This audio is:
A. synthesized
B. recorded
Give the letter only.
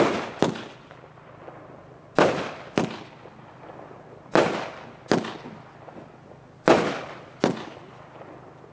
B